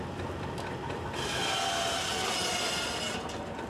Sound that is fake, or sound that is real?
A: real